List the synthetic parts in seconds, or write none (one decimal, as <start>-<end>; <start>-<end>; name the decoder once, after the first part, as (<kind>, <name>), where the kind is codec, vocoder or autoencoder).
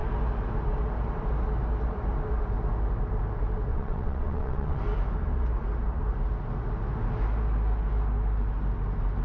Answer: 3.7-4.8 (vocoder, WaveNeXt)